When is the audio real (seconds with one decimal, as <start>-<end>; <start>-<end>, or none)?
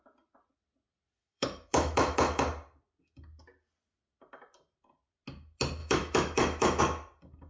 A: 0.0-1.2; 2.4-5.8; 6.8-7.5